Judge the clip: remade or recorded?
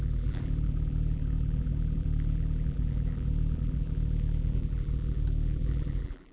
remade